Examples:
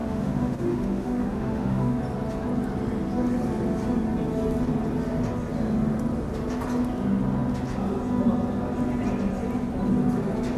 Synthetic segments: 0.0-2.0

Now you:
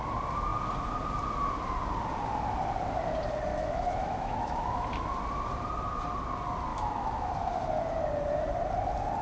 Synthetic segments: 3.5-5.0; 6.7-7.3

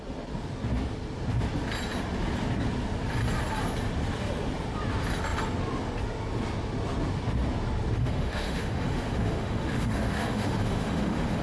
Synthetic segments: 8.0-11.4

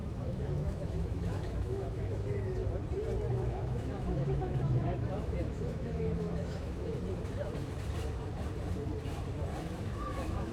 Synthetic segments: 0.0-2.6; 3.3-6.9; 9.6-10.5

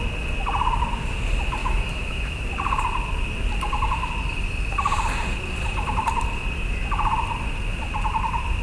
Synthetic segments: 1.6-2.5